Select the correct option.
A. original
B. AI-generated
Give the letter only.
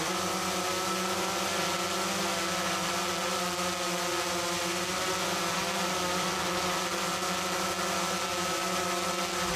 A